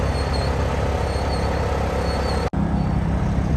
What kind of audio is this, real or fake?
real